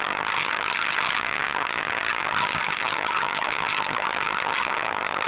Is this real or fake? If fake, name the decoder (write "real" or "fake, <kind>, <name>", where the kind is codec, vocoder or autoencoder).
fake, vocoder, HiFi-GAN